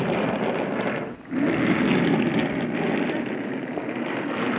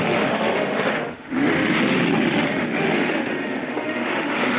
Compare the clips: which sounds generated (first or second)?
second